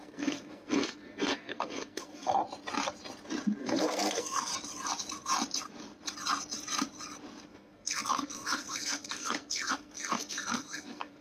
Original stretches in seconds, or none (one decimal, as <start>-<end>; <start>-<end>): 2.4-3.6; 4.5-7.5